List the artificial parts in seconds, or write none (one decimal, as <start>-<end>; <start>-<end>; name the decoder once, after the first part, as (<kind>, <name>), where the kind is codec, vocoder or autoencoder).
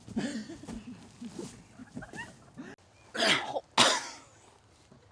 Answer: none